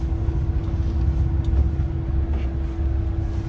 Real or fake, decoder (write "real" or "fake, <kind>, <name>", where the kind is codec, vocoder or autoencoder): real